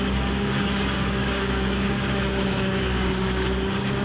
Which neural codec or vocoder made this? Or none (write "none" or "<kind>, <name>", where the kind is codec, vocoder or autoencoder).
codec, DAC